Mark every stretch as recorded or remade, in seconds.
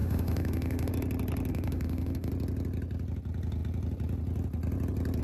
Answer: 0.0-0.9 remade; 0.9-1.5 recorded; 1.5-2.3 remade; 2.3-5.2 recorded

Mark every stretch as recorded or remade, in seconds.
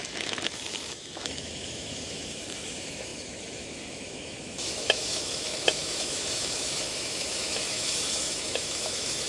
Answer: 0.0-9.3 remade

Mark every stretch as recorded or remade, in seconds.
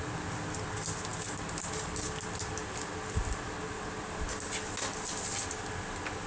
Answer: 0.0-6.3 recorded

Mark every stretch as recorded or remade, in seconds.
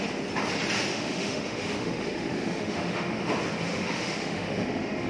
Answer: 0.0-0.9 recorded; 0.9-3.3 remade; 3.3-3.7 recorded; 3.7-5.1 remade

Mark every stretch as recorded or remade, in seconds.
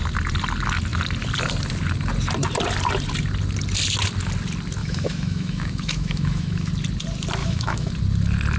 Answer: 0.0-4.8 recorded; 4.8-6.7 remade; 6.7-7.4 recorded; 7.4-7.9 remade; 7.9-8.6 recorded